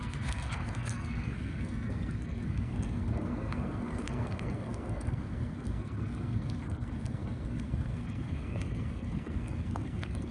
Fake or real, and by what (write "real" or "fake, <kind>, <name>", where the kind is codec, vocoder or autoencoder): fake, codec, SNAC